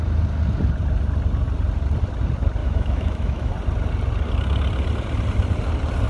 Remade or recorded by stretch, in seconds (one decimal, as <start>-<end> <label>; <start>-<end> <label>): 0.0-2.6 recorded; 2.6-3.5 remade; 3.5-6.1 recorded